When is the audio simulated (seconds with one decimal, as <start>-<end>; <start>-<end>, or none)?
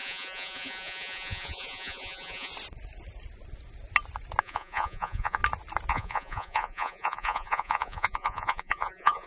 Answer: 0.0-2.5; 4.4-5.4; 5.9-9.3